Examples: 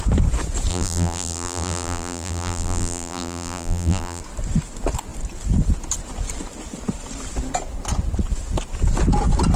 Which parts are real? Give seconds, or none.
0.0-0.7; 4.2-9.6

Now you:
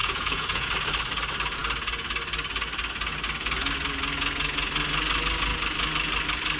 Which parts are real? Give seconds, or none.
0.7-6.6